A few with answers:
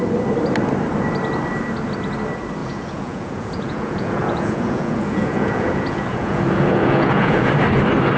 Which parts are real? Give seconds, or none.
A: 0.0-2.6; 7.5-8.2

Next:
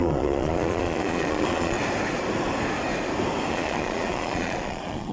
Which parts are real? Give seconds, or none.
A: 1.8-3.5

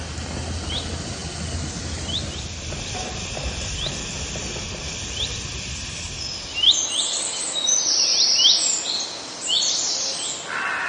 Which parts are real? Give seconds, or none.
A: 0.0-10.9

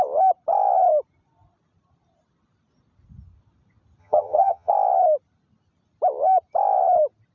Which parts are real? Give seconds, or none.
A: 0.0-4.0; 4.7-7.3

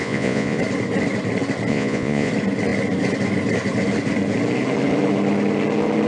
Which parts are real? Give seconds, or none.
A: 0.6-1.7; 2.3-6.1

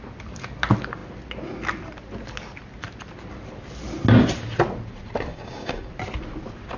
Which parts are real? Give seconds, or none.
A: 0.0-5.3; 5.9-6.8